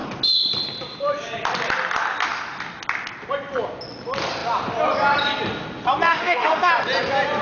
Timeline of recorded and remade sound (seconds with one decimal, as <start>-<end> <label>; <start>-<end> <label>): 0.0-6.1 recorded; 6.1-6.7 remade; 6.7-7.4 recorded